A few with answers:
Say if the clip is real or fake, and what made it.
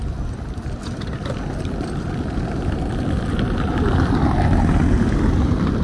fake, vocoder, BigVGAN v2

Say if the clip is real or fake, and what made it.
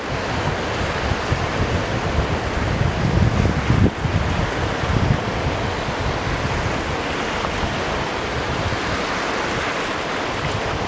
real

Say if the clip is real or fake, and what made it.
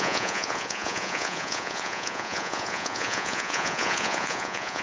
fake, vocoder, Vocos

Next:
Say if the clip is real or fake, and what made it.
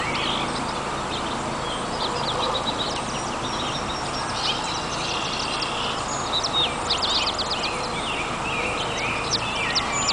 real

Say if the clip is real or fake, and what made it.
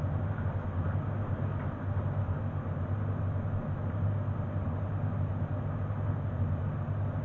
real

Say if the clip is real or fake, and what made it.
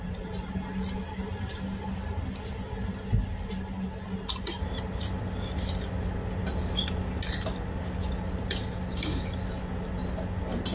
real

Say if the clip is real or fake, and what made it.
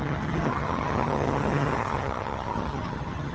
fake, vocoder, HiFi-GAN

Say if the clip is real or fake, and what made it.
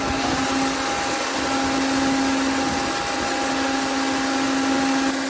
real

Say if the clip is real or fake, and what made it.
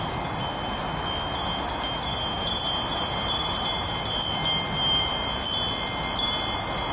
real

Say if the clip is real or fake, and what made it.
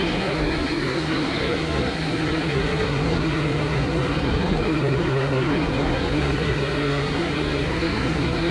fake, codec, SNAC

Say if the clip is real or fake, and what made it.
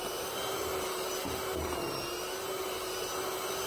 real